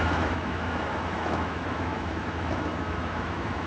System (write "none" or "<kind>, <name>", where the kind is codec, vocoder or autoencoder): autoencoder, DAC-VAE